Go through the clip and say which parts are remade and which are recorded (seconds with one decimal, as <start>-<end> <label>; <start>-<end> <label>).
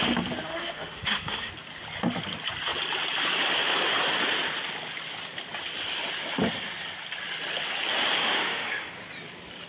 0.0-0.5 recorded; 0.5-1.5 remade; 1.5-8.2 recorded; 8.2-8.9 remade; 8.9-9.7 recorded